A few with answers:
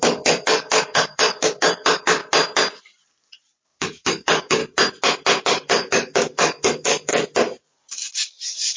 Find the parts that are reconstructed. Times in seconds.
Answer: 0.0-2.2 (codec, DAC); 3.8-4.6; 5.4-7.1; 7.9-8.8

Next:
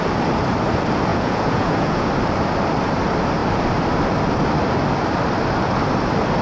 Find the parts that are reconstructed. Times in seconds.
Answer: 1.1-2.1 (vocoder, Vocos)

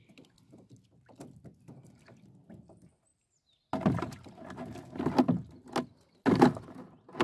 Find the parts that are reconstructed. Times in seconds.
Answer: none

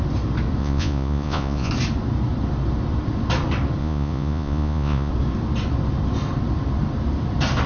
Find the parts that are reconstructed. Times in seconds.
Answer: 0.6-1.7 (vocoder, Vocos); 3.8-5.1

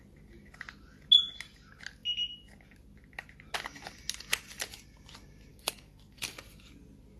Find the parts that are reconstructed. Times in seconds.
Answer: 5.5-6.3 (codec, SNAC)

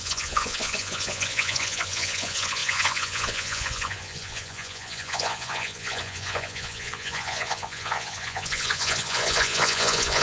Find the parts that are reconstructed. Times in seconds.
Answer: 0.0-10.2 (vocoder, Vocos)